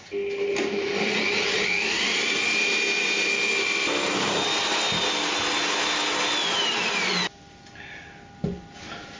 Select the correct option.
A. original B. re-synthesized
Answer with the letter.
A